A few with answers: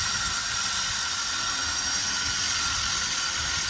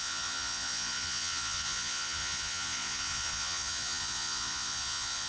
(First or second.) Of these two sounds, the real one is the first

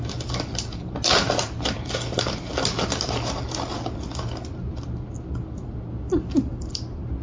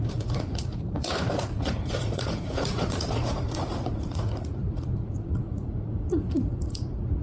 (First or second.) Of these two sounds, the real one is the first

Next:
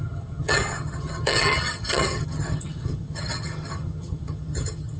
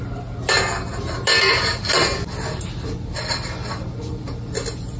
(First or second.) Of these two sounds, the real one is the second